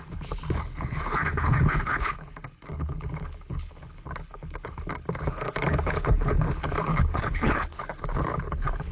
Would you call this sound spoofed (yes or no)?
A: yes